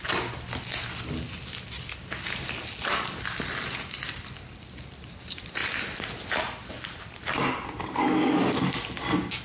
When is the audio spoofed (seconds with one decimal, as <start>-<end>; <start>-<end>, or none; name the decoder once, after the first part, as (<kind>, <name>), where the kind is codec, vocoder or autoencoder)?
none

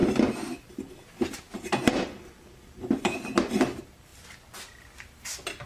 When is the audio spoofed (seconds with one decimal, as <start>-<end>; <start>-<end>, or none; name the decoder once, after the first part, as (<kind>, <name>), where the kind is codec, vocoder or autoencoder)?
none

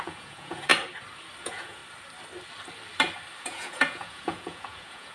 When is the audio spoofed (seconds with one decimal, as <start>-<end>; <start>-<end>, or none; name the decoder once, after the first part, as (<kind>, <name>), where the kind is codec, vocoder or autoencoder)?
0.0-0.7 (vocoder, Vocos); 1.4-1.8; 3.4-5.1

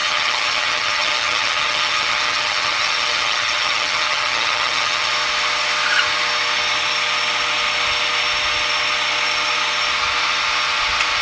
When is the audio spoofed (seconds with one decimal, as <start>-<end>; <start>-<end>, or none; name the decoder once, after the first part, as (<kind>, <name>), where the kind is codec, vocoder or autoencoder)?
0.0-5.1 (vocoder, HiFi-GAN)